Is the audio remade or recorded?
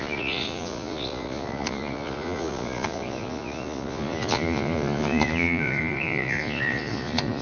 remade